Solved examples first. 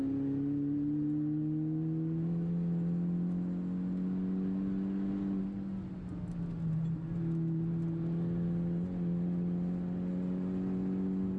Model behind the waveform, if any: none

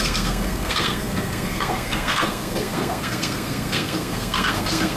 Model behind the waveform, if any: codec, SNAC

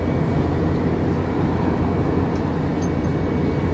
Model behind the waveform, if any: none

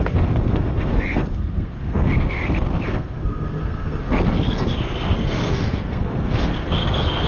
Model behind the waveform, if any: codec, SNAC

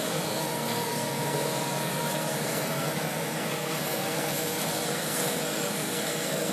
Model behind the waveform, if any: codec, SNAC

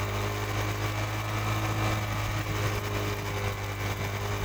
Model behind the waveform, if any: none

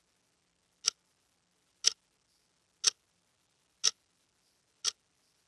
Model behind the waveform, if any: none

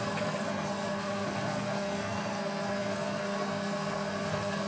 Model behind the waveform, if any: codec, SNAC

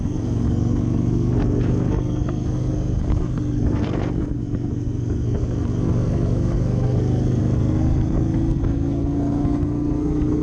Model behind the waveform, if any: codec, SNAC